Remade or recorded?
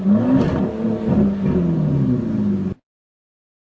recorded